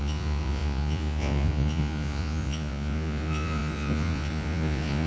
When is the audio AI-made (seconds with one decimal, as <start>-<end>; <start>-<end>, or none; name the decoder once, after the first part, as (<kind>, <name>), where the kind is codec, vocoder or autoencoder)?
0.0-5.1 (vocoder, Vocos)